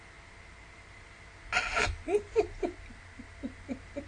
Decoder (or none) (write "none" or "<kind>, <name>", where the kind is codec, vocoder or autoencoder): none